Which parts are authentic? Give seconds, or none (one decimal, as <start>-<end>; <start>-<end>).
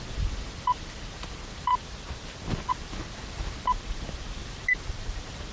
1.7-2.7